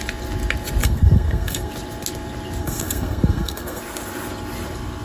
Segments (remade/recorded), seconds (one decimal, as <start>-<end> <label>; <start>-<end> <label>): 0.0-0.8 recorded; 0.8-1.7 remade; 1.7-2.6 recorded; 2.6-3.8 remade; 3.8-5.0 recorded